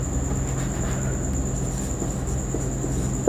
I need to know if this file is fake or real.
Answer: real